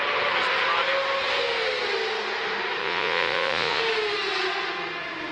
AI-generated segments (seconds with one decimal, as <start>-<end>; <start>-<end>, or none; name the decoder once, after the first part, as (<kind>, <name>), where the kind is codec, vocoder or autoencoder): 2.8-3.8 (vocoder, Vocos)